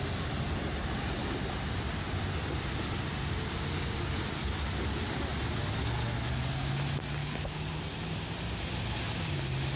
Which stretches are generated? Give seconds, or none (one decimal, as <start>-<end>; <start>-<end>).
7.2-7.7